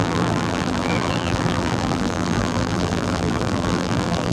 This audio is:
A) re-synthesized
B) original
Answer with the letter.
A